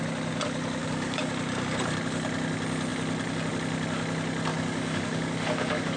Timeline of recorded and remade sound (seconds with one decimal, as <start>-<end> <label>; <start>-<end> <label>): 0.0-0.8 recorded; 0.8-1.3 remade; 1.3-4.5 recorded; 4.5-6.0 remade